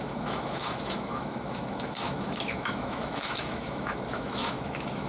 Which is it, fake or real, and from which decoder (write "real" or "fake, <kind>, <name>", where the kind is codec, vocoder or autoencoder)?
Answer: fake, autoencoder, DAC-VAE